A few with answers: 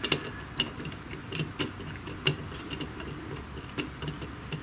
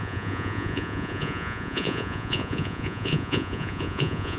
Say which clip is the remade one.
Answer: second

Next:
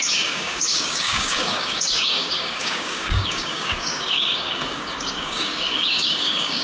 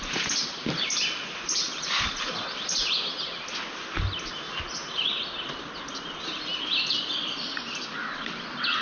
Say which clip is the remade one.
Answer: first